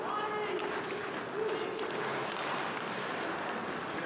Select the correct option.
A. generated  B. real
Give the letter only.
B